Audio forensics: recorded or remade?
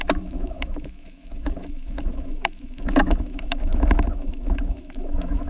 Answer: remade